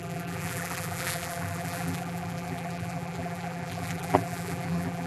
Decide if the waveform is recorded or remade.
remade